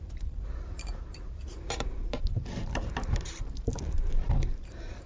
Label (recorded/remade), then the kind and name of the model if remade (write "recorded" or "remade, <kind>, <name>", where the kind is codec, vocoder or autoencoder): remade, vocoder, BigVGAN v2